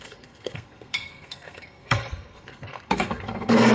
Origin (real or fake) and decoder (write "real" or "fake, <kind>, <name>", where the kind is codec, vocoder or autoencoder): fake, codec, SNAC